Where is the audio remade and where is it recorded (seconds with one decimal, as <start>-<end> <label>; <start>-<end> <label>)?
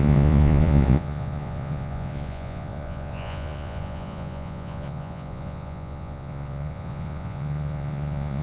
0.0-8.4 remade